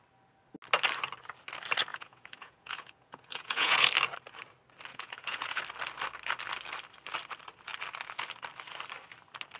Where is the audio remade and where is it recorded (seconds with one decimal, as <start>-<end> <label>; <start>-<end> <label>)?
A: 0.0-1.9 recorded; 1.9-3.9 remade; 3.9-4.9 recorded; 4.9-5.6 remade; 5.6-9.6 recorded